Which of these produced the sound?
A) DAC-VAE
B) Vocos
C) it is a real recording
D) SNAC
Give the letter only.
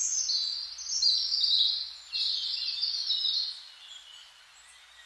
C